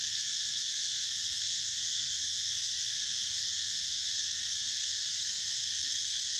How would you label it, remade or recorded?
remade